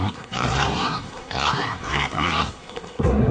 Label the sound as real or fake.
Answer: fake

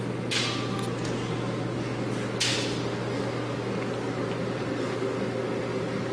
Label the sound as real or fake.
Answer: real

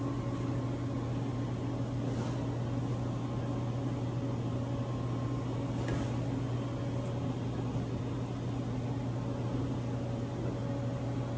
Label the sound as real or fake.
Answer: real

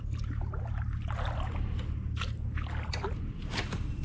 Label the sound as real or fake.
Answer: real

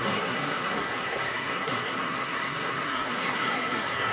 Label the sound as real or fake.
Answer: fake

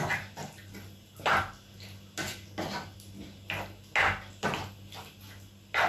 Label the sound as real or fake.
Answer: real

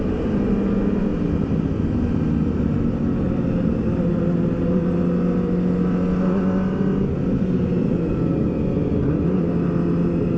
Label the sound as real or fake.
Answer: real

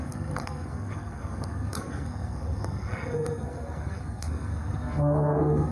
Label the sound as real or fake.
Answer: fake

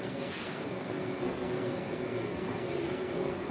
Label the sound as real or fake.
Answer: fake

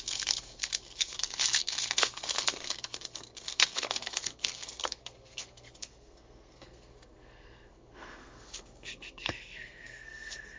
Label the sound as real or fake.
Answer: fake